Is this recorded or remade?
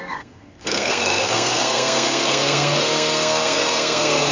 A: remade